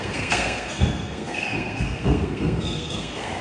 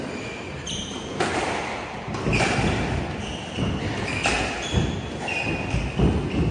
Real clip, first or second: second